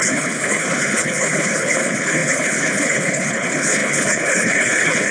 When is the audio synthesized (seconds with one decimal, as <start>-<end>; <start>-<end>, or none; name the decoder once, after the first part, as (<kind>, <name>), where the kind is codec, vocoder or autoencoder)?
0.0-5.1 (codec, HILCodec)